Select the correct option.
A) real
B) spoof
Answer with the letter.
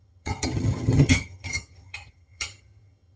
B